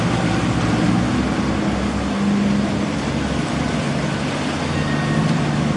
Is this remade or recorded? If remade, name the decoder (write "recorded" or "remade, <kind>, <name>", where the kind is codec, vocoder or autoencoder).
recorded